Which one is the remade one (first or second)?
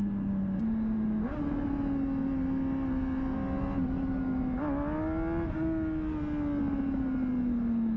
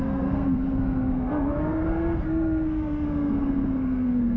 second